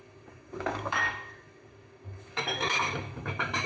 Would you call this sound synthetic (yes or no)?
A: yes